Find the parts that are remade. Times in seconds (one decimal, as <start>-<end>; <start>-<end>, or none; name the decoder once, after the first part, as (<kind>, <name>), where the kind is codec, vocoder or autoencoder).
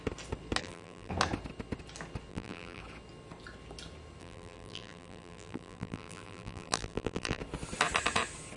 0.6-1.1 (vocoder, BigVGAN v2); 2.3-2.8; 4.2-7.4